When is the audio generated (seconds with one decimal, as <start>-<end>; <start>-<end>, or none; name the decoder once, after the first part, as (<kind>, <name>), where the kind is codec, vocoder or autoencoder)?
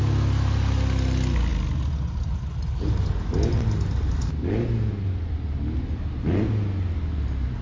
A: none